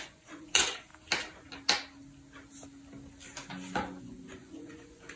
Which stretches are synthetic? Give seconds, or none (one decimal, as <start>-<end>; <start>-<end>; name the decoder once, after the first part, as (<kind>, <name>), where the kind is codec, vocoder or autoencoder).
0.0-0.9 (vocoder, Vocos); 4.0-5.2